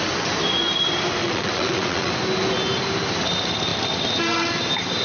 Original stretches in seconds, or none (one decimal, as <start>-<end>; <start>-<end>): 0.0-1.2; 2.1-5.0

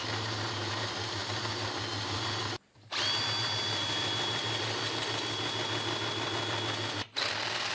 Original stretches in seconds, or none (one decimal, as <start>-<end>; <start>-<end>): 0.0-7.7

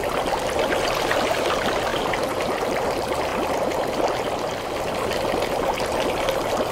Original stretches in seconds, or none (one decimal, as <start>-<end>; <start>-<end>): 0.0-1.9; 2.5-6.7

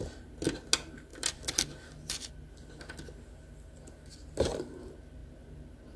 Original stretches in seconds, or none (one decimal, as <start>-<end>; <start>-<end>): 0.0-1.1; 2.3-6.0

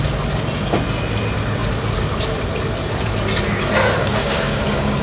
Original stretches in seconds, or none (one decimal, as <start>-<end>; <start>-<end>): 0.0-4.0

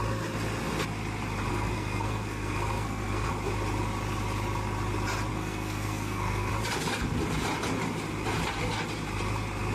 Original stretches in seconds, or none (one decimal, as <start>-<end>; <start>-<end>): 0.0-1.5; 3.3-5.3; 6.5-9.7

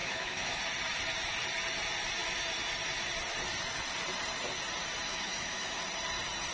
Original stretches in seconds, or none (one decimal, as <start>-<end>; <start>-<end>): 0.6-5.1; 5.8-6.5